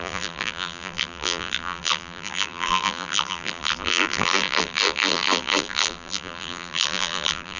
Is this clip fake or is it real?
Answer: fake